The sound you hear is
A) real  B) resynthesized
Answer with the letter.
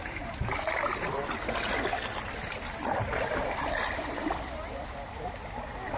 A